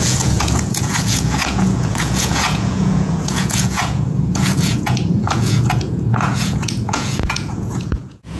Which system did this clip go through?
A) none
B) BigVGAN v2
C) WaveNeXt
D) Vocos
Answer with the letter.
D